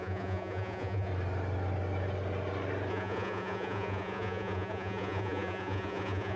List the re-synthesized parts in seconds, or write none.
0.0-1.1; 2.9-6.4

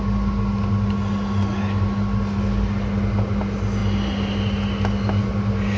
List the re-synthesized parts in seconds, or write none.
none

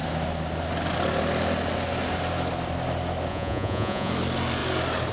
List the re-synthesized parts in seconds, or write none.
3.3-4.1

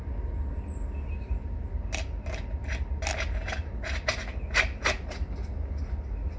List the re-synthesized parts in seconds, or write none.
none

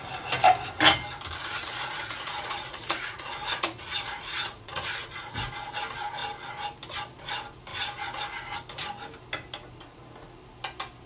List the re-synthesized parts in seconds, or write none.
1.4-5.5